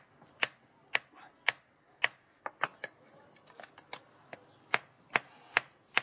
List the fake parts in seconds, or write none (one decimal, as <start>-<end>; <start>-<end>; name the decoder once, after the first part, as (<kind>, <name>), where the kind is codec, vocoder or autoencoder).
none